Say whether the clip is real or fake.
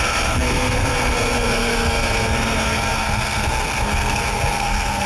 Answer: fake